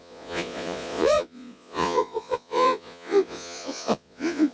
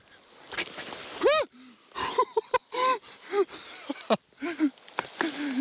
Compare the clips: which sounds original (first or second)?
second